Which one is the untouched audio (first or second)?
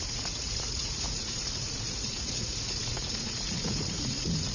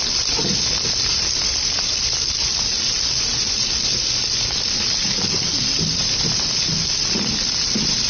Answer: second